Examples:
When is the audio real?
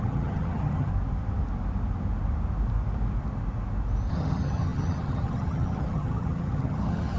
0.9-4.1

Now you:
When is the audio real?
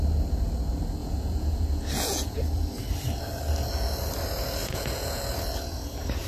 0.0-1.0; 2.4-4.6; 5.2-6.3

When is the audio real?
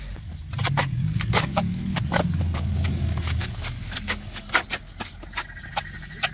0.0-0.8; 4.6-6.3